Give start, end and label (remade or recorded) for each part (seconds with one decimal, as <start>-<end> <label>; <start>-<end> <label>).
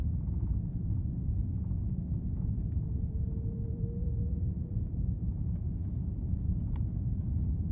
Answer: 0.0-1.0 remade; 1.0-2.4 recorded; 2.4-5.8 remade; 5.8-6.7 recorded; 6.7-7.7 remade